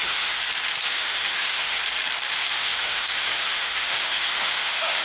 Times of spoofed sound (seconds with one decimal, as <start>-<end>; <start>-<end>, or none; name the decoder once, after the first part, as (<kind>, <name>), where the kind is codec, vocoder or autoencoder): 0.0-0.4 (autoencoder, DAC-VAE); 0.9-1.8; 2.3-5.0